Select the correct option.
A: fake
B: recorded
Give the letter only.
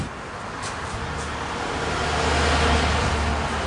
B